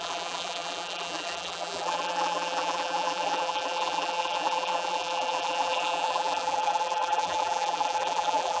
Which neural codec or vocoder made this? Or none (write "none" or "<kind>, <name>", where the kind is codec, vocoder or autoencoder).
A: vocoder, BigVGAN v2